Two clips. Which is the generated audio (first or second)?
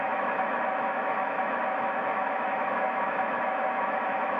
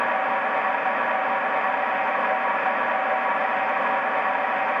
first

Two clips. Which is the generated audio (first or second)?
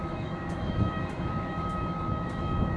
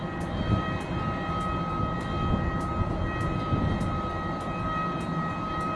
first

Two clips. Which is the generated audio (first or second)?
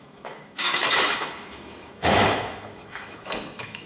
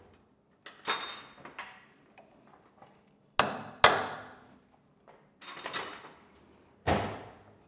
first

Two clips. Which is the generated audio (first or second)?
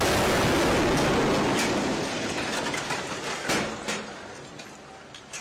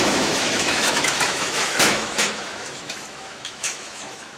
second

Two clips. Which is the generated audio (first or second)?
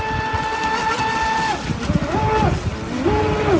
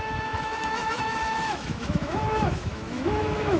second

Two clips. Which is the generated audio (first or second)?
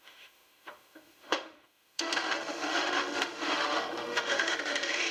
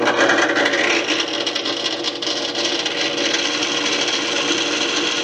first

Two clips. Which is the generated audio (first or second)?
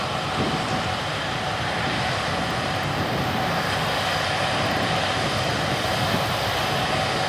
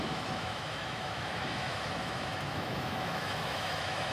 second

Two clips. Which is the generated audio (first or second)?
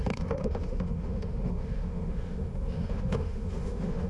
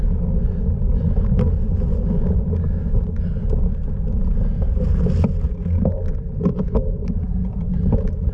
first